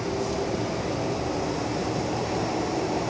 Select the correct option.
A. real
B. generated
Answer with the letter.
A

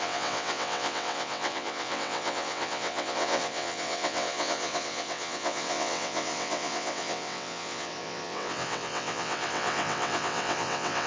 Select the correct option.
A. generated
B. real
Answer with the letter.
A